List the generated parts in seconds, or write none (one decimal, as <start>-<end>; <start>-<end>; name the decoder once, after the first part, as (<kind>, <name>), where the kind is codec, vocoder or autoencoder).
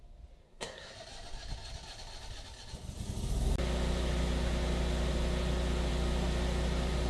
0.4-0.9 (codec, SNAC)